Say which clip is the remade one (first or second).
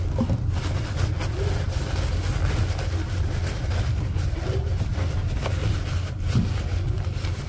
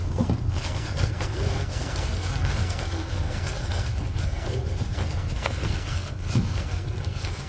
second